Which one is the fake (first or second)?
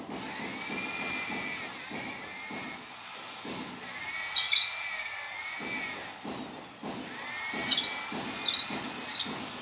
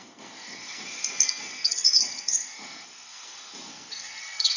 second